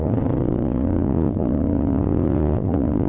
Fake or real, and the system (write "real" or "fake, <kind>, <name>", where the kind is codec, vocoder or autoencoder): fake, vocoder, Vocos